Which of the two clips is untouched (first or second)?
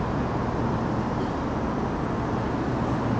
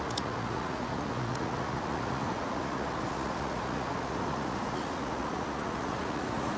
first